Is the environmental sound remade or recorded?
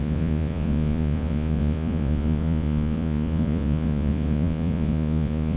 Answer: remade